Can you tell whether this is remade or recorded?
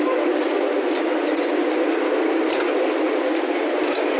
recorded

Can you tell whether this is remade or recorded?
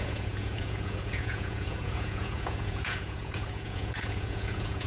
remade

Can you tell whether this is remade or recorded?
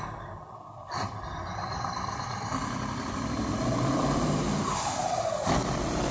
remade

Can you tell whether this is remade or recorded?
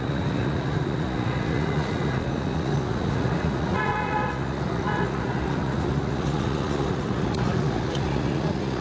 remade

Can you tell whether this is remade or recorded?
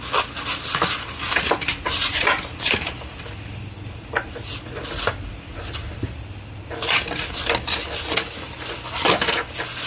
recorded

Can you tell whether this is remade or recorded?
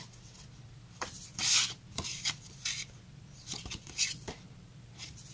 recorded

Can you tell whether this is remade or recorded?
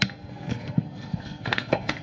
remade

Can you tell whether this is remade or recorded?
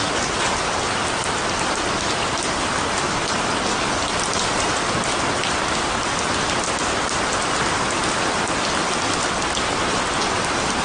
recorded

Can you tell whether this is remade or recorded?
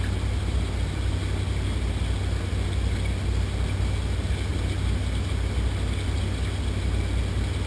recorded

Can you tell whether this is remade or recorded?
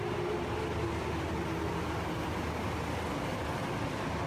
recorded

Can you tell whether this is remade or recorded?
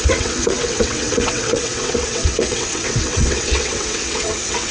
remade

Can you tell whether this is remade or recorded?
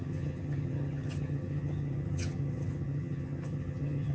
remade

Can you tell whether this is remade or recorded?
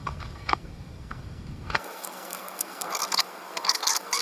remade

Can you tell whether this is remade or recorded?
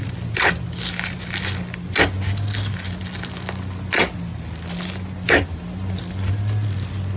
recorded